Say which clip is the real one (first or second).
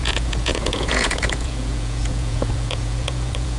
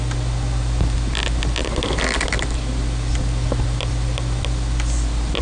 second